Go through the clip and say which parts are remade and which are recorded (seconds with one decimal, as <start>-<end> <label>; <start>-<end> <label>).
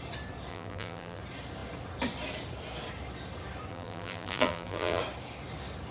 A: 0.0-0.5 recorded; 0.5-1.2 remade; 1.2-3.7 recorded; 3.7-5.0 remade; 5.0-5.9 recorded